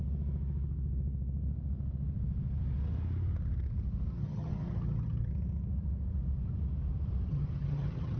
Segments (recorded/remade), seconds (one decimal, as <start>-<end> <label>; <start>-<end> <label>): 0.0-4.1 recorded; 4.1-5.3 remade; 5.3-7.3 recorded; 7.3-8.2 remade